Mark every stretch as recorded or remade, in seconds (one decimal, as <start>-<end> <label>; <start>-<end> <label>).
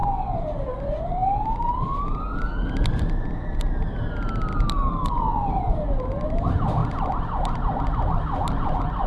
0.0-4.5 recorded; 4.5-5.7 remade; 5.7-9.1 recorded